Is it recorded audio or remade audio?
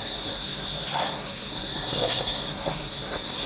remade